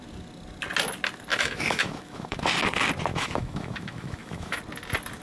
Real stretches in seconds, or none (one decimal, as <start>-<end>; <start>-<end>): 0.0-1.3; 2.4-3.1; 4.6-5.2